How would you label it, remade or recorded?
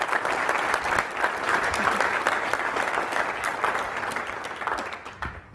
recorded